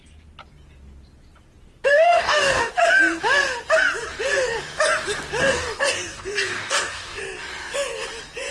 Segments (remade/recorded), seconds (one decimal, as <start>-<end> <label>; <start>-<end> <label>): 0.0-1.9 recorded; 1.9-2.7 remade; 2.7-5.4 recorded; 5.4-7.2 remade; 7.2-8.5 recorded